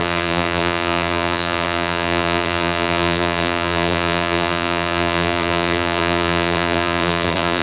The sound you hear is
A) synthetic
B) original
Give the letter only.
A